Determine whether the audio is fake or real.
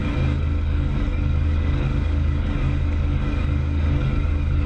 fake